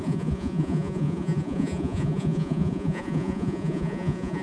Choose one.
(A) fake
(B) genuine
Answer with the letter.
A